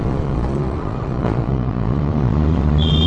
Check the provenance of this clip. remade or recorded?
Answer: remade